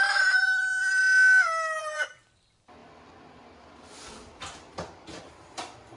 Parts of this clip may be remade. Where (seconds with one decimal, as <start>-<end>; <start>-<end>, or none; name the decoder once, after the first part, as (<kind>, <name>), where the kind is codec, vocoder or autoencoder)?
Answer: 0.0-1.0 (vocoder, BigVGAN v2); 1.8-6.0